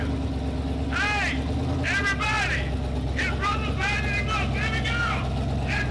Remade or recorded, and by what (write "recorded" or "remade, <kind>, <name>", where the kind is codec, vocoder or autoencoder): recorded